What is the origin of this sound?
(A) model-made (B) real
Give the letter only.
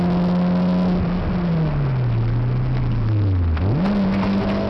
B